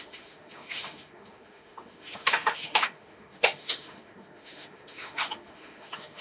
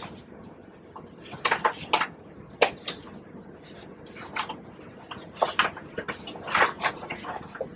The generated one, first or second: first